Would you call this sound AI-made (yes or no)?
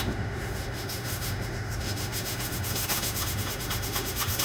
yes